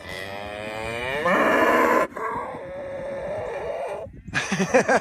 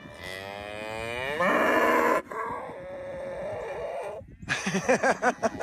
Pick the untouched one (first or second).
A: second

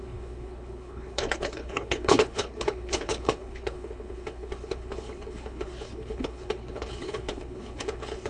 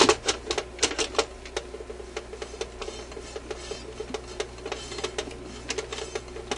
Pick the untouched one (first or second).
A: second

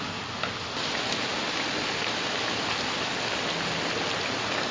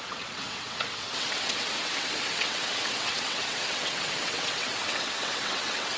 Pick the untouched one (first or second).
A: first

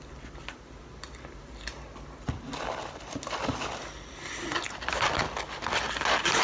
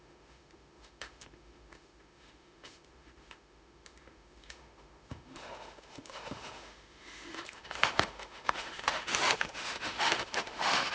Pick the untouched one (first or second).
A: first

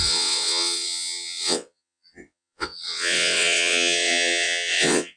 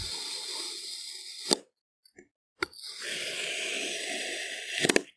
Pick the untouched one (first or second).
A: second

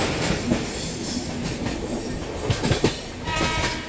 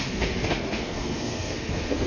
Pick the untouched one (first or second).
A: first